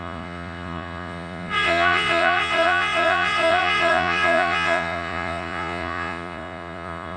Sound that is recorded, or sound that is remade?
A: remade